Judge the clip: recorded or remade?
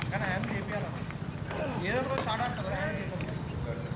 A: recorded